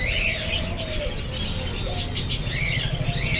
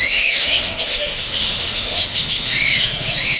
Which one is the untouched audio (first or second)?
first